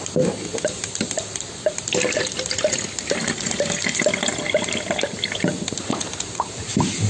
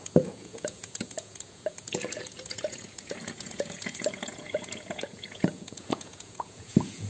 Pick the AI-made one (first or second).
second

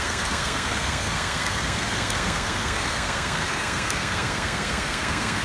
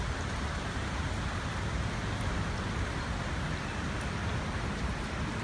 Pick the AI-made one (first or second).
first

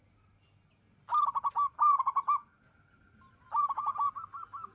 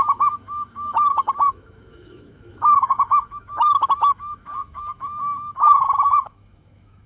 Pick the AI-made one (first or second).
second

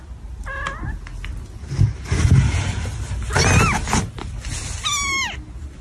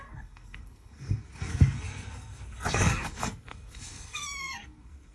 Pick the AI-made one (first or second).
second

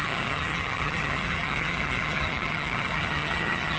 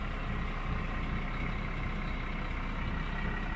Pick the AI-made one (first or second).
first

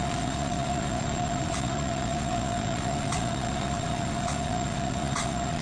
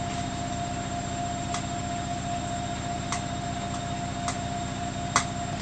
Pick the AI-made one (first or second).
first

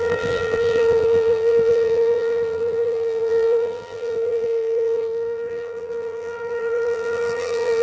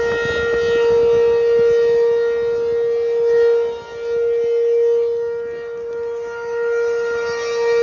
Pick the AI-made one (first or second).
first